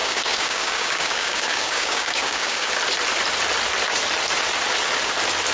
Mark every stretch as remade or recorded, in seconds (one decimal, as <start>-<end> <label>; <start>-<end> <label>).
0.0-2.7 remade; 2.7-5.5 recorded